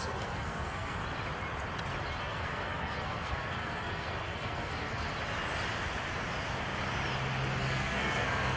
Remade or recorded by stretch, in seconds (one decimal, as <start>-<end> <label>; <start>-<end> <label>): 0.0-1.0 remade; 1.0-2.2 recorded; 2.2-5.1 remade; 5.1-7.6 recorded; 7.6-8.6 remade